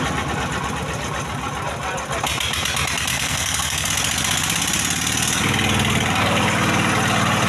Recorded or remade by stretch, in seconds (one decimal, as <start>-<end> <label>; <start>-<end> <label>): 0.0-3.1 recorded; 3.1-3.9 remade; 3.9-7.5 recorded